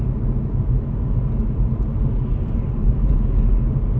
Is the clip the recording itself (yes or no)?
yes